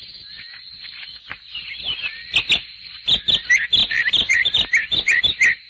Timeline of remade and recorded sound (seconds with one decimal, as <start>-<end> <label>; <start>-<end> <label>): 0.0-3.8 recorded; 3.8-5.2 remade; 5.2-5.7 recorded